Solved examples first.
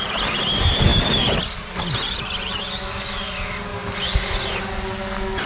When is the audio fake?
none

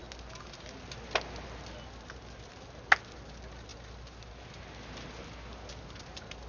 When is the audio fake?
none

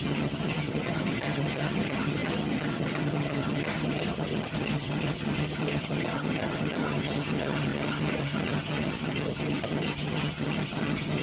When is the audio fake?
0.0-11.2 (vocoder, HiFi-GAN)

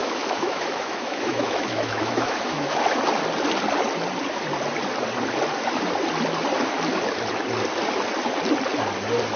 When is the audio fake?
0.0-2.8 (autoencoder, DAC-VAE)

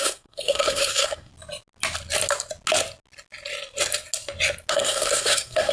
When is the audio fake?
0.0-1.3 (codec, SNAC); 4.7-5.7

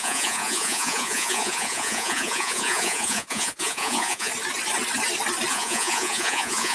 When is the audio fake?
0.0-4.3 (vocoder, Vocos); 5.5-6.7

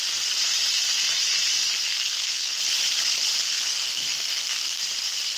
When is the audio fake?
1.9-2.6 (codec, SNAC); 3.4-4.8

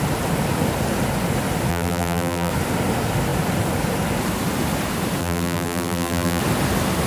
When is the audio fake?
1.7-2.5 (vocoder, BigVGAN v2); 5.2-6.4